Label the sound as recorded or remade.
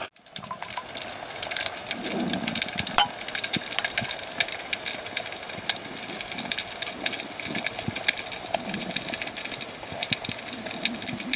recorded